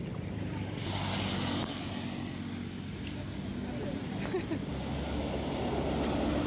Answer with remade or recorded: recorded